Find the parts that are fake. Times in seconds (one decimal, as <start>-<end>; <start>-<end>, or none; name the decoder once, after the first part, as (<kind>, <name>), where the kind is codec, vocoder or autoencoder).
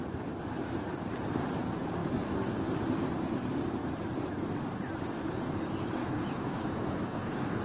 6.0-7.6 (autoencoder, DAC-VAE)